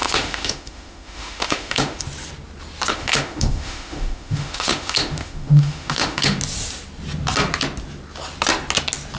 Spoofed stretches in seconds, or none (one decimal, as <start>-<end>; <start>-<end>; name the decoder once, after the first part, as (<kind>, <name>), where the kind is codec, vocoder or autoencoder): 0.0-2.0 (autoencoder, DAC-VAE); 2.9-6.4